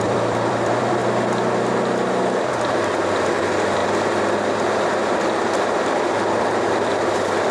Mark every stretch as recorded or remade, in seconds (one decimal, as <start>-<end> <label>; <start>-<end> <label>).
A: 0.0-1.0 remade; 1.0-2.2 recorded; 2.2-3.8 remade; 3.8-5.1 recorded; 5.1-7.5 remade